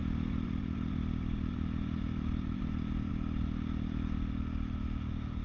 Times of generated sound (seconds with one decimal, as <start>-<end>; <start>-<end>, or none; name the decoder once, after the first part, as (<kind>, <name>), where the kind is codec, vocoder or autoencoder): 0.0-3.1 (vocoder, BigVGAN v2)